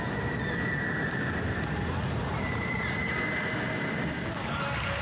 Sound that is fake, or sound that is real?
real